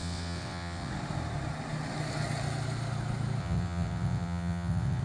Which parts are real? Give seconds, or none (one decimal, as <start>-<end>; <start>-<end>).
0.9-3.4